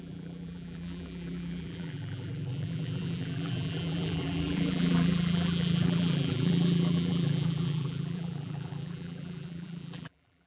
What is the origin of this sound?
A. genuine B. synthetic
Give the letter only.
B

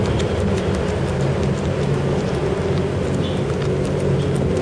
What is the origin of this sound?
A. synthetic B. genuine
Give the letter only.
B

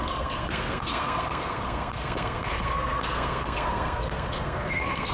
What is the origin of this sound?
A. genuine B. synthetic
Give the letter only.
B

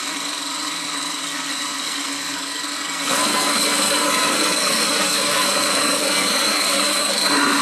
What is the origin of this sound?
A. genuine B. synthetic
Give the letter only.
B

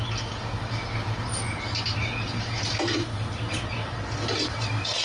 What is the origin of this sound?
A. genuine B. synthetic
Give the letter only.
A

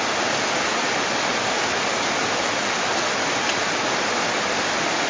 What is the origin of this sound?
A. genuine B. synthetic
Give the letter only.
A